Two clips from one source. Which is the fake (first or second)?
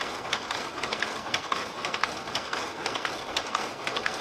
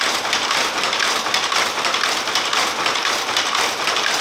first